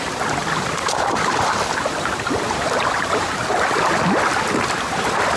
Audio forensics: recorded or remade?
recorded